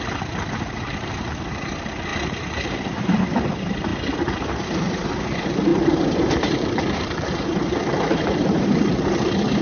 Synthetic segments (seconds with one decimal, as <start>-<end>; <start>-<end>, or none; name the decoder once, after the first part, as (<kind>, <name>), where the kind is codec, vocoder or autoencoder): 0.0-3.9 (vocoder, BigVGAN v2); 4.4-9.6